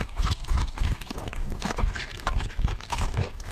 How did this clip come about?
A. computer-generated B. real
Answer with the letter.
A